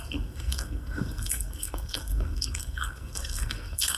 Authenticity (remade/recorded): remade